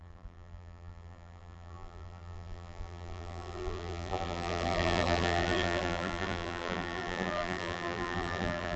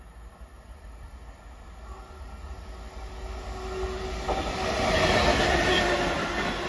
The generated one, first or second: first